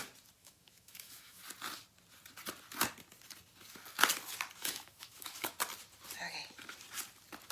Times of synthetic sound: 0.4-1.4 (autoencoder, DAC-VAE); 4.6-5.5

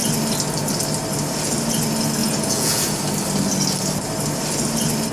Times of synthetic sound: 2.2-3.0 (vocoder, Vocos)

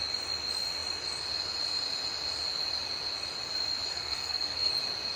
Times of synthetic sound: 3.9-4.7 (codec, SNAC)